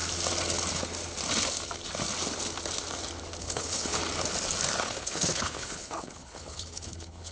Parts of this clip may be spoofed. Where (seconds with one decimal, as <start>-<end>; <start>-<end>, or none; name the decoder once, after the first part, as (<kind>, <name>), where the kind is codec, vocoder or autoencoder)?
3.4-4.0 (codec, HILCodec); 4.8-7.3